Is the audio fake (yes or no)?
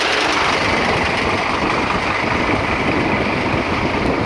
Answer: no